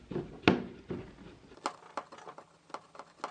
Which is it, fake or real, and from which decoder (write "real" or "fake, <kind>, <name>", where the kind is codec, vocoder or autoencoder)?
real